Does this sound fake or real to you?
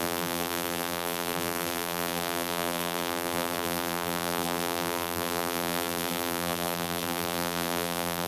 fake